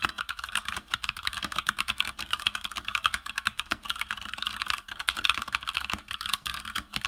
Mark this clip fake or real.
fake